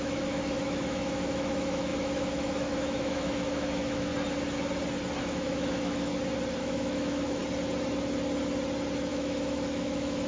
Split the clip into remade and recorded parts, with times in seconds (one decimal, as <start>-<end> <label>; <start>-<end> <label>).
0.0-4.1 remade; 4.1-5.2 recorded; 5.2-6.1 remade; 6.1-6.6 recorded; 6.6-7.4 remade; 7.4-9.1 recorded; 9.1-10.3 remade